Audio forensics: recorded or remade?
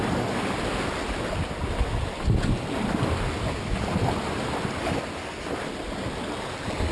recorded